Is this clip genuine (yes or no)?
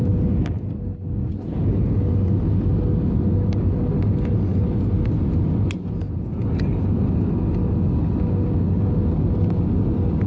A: yes